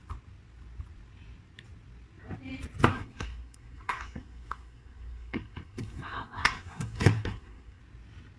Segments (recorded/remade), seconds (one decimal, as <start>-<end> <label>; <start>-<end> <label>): 0.0-2.9 recorded; 2.9-7.8 remade; 7.8-8.4 recorded

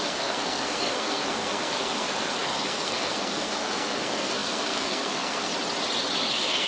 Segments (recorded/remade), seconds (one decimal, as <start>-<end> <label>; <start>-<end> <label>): 0.0-5.5 remade; 5.5-6.3 recorded; 6.3-6.7 remade

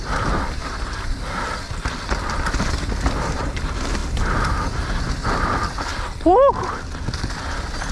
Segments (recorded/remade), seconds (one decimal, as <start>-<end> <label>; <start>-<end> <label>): 0.0-7.9 recorded

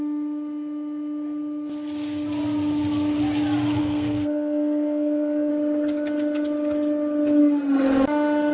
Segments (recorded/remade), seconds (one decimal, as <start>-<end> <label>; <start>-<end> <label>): 0.0-3.8 recorded; 3.8-5.5 remade; 5.5-8.5 recorded

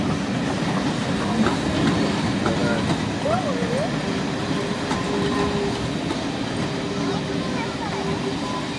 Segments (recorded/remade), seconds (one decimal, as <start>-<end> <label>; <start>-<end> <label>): 0.0-8.8 recorded